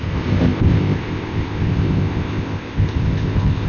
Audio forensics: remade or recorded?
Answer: remade